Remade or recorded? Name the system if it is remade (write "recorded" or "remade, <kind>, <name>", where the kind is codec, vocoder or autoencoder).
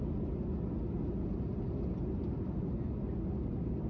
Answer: recorded